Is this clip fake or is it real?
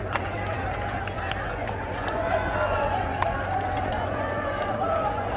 fake